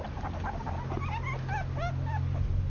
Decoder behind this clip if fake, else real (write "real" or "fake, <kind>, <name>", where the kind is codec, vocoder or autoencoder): real